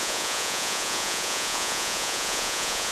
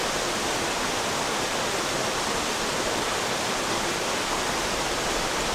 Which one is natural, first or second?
second